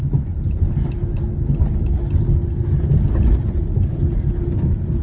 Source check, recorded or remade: recorded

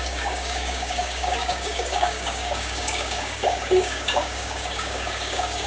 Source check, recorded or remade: remade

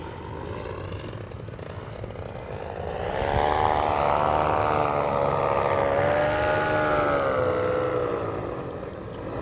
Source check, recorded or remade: recorded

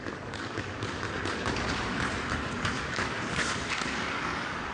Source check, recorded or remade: remade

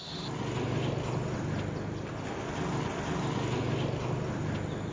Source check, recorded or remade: recorded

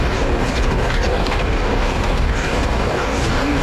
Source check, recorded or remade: remade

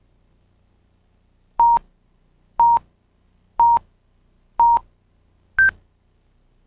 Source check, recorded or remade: recorded